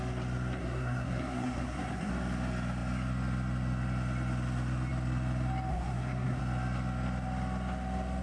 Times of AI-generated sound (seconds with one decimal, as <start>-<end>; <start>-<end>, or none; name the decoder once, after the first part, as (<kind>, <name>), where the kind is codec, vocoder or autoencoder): 0.6-2.1 (codec, SNAC); 5.7-6.4